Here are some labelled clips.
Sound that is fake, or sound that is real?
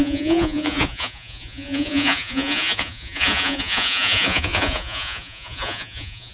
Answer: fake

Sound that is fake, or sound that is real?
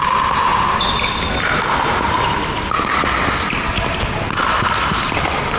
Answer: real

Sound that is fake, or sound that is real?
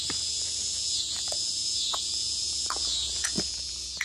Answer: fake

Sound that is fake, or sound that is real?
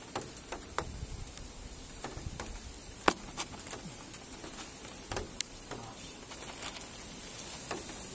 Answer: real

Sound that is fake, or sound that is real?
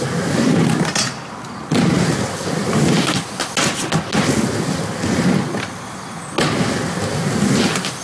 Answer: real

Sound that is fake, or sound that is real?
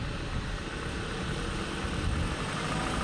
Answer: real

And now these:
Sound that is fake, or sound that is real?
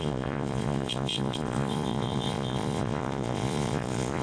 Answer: fake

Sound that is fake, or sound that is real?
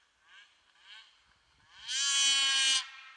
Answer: real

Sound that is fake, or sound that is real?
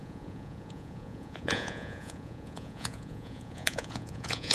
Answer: fake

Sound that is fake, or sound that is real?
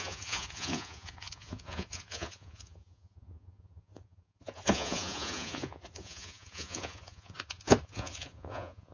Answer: fake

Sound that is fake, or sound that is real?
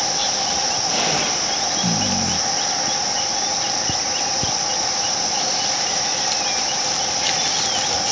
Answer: real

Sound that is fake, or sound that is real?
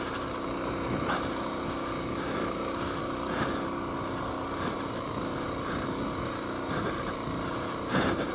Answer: real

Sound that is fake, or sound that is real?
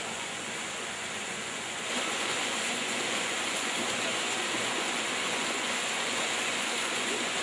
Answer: fake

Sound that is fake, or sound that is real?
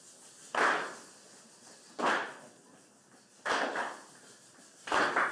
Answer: real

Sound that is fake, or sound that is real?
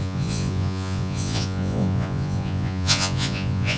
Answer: fake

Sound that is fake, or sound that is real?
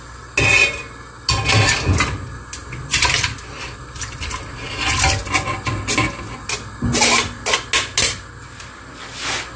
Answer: real